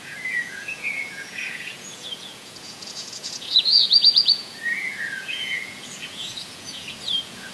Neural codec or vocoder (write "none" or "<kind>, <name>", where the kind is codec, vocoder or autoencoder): vocoder, Vocos